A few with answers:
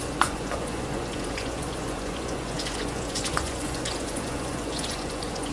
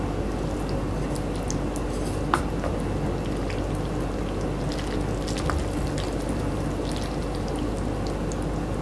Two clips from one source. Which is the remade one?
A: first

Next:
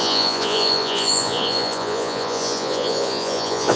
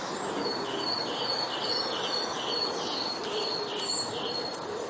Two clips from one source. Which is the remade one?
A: first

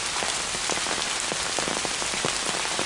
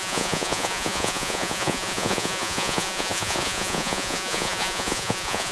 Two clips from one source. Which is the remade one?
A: second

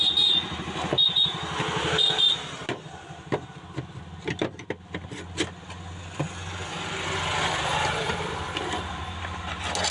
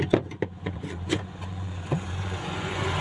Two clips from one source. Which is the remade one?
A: second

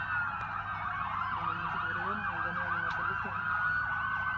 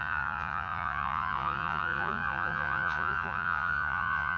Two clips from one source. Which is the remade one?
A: second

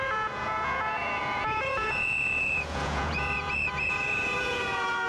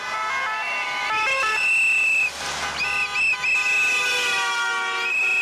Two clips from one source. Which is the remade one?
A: first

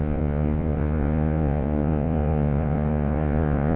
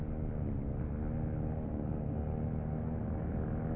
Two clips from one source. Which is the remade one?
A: first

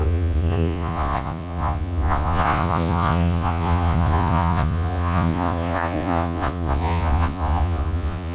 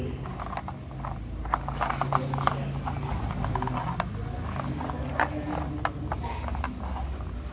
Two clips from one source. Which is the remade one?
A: first